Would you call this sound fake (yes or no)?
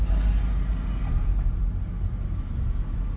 no